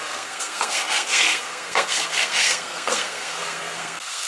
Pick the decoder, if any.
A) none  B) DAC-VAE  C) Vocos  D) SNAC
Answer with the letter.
D